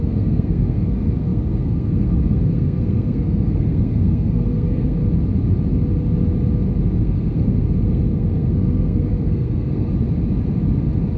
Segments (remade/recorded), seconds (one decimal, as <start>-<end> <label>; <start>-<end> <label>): 0.0-5.0 remade; 5.0-7.0 recorded; 7.0-9.9 remade; 9.9-11.2 recorded